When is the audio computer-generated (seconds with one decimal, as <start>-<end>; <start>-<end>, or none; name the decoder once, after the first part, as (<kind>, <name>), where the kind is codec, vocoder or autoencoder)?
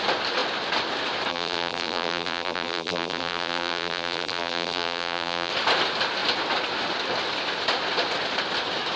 1.3-5.5 (vocoder, BigVGAN v2)